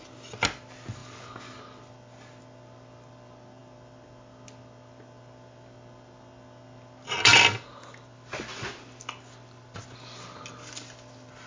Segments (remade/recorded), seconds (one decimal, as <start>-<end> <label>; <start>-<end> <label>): 0.0-11.5 recorded